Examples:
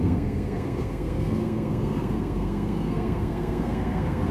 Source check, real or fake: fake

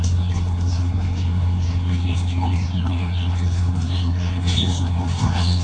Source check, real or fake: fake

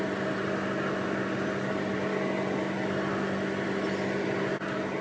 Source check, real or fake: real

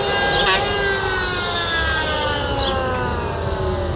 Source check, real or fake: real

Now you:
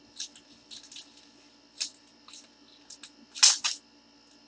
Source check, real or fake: real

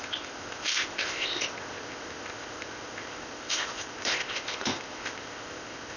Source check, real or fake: fake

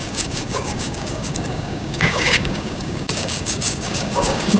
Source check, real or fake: fake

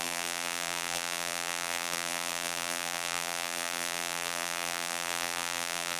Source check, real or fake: fake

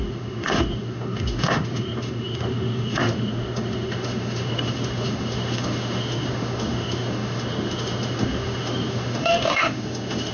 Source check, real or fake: fake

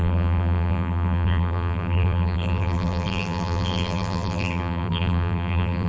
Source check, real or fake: fake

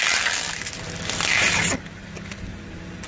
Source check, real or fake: real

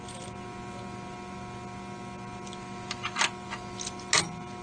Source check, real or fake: real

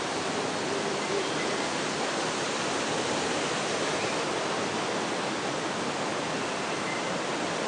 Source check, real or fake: real